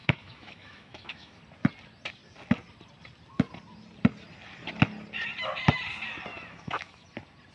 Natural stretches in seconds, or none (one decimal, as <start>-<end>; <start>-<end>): 1.4-6.3; 7.0-7.5